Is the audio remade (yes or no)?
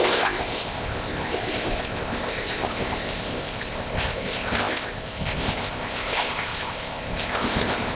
yes